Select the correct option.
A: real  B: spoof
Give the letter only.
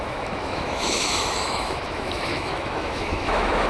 B